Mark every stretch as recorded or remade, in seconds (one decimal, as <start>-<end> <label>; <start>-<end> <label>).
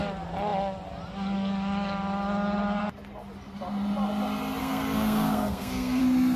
0.0-4.6 recorded; 4.6-6.0 remade; 6.0-6.4 recorded